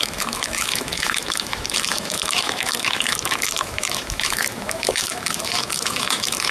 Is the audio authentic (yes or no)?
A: no